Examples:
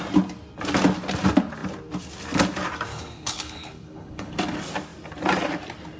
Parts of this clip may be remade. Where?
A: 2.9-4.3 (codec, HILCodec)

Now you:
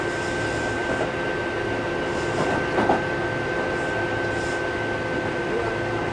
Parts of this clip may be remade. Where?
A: none